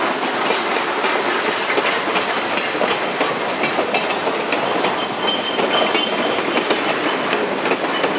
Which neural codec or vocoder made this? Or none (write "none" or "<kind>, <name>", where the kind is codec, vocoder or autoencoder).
none